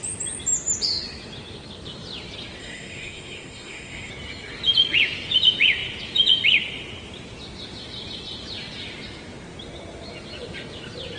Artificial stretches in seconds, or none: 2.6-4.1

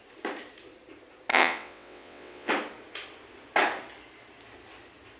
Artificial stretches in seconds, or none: 1.3-2.5

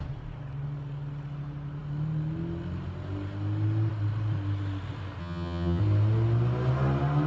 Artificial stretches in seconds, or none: 5.2-5.8

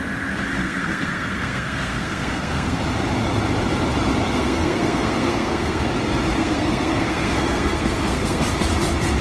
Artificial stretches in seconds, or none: 0.6-2.8; 4.3-5.9; 6.4-8.4

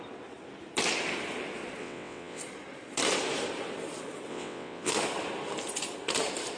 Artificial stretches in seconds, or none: 1.8-2.4; 4.3-4.9